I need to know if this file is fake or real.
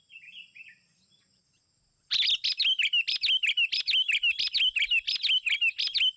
real